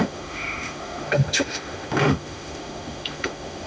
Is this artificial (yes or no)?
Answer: yes